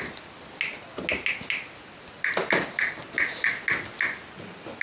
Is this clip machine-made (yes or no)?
no